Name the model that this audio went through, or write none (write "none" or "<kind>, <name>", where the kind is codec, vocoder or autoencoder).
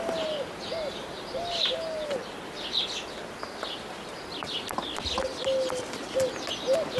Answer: none